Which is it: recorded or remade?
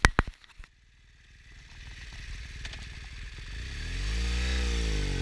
recorded